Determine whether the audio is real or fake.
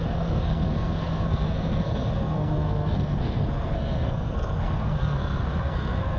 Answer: fake